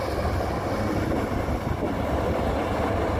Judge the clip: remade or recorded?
recorded